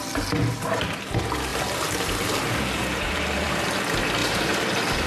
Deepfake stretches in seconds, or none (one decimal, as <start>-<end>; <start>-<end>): 1.5-3.8; 4.2-5.1